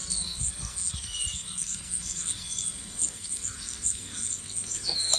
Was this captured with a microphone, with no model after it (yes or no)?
no